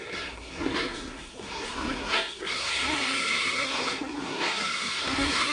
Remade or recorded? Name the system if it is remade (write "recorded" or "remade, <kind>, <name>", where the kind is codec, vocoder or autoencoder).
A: remade, codec, SNAC